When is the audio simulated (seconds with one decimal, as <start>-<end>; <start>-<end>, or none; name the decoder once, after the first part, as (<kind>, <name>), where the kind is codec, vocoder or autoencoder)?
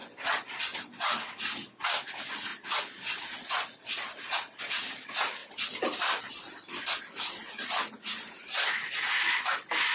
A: 5.4-6.2 (vocoder, BigVGAN v2)